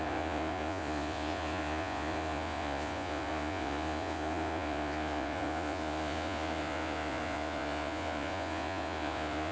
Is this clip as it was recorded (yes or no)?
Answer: no